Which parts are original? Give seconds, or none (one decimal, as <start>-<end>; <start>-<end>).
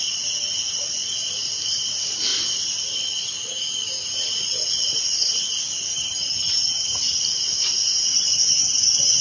0.0-5.9; 7.2-8.1